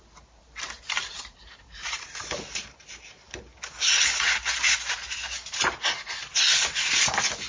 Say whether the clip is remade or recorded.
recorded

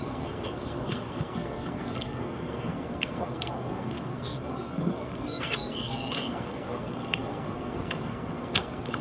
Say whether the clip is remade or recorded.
remade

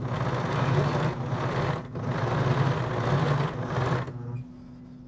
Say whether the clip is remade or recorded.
recorded